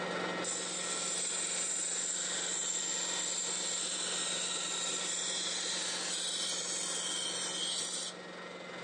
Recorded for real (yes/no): yes